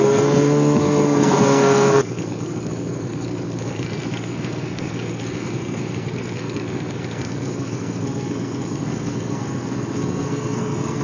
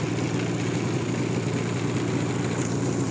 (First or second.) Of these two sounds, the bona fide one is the second